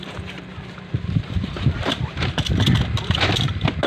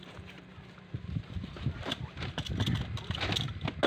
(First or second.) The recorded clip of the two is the second